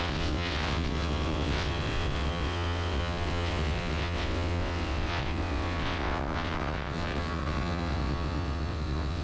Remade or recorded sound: remade